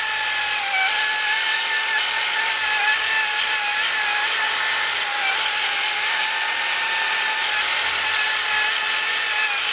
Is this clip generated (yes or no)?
no